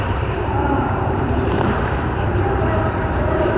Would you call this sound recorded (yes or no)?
no